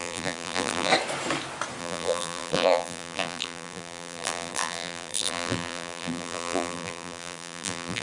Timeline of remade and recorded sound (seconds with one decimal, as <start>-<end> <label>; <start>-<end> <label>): 0.0-0.9 remade; 0.9-1.8 recorded; 1.8-8.0 remade